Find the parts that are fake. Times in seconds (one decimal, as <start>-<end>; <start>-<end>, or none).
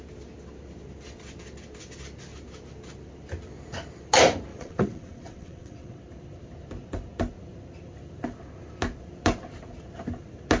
4.5-6.0